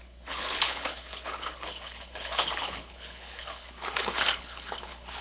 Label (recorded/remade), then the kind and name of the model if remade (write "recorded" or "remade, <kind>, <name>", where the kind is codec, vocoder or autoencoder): remade, codec, HILCodec